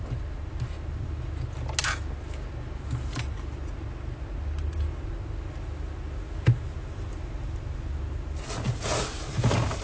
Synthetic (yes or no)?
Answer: no